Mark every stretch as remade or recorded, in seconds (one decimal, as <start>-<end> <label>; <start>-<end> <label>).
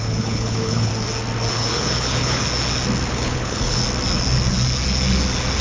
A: 0.0-0.9 remade; 0.9-1.5 recorded; 1.5-2.4 remade; 2.4-3.1 recorded; 3.1-3.8 remade; 3.8-5.6 recorded